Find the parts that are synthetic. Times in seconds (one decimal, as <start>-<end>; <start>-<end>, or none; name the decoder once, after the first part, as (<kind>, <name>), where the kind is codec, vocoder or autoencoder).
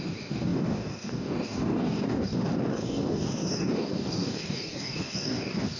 0.0-5.8 (codec, DAC)